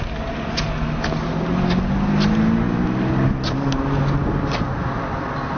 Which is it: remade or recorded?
recorded